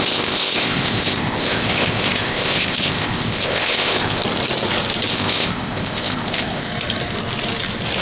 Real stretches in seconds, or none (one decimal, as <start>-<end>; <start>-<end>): 4.2-5.1; 6.7-8.0